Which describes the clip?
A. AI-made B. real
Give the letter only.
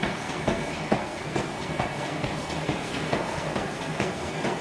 A